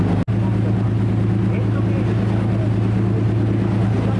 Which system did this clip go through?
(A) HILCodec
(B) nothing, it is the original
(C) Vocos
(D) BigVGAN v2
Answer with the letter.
B